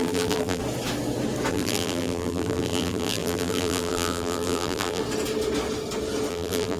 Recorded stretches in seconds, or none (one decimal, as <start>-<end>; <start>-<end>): 0.6-1.5; 5.0-6.3